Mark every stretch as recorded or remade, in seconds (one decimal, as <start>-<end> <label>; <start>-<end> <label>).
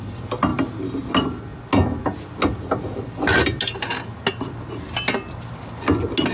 0.0-6.3 recorded